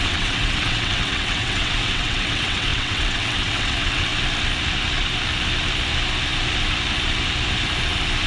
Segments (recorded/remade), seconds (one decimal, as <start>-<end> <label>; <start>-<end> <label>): 0.0-4.1 remade; 4.1-8.3 recorded